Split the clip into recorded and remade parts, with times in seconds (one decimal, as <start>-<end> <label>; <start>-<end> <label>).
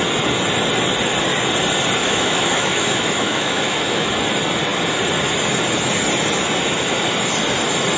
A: 0.0-2.0 recorded; 2.0-4.1 remade; 4.1-8.0 recorded